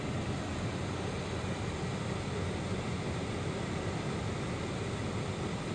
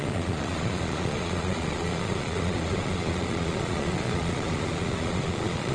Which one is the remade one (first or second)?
second